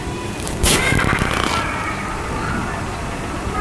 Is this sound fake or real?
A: real